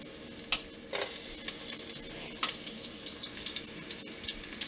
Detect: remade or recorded recorded